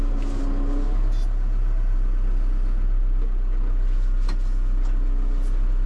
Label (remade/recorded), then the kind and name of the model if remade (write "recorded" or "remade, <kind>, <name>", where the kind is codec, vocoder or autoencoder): recorded